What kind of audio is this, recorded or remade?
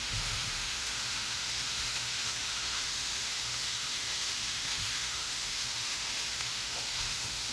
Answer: remade